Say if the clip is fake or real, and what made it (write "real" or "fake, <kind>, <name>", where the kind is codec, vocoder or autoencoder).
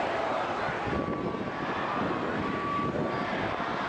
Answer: real